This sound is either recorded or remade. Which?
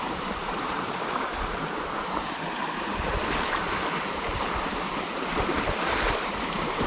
remade